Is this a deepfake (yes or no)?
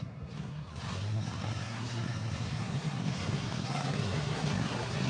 yes